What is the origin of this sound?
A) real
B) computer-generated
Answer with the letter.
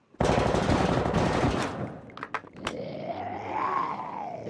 A